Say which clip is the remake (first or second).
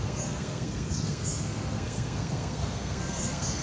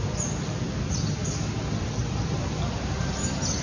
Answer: first